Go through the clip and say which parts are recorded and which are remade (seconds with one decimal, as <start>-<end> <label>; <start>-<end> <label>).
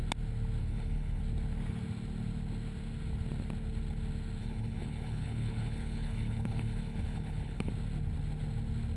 0.0-0.6 recorded; 0.6-1.2 remade; 1.2-4.4 recorded; 4.4-7.7 remade; 7.7-9.0 recorded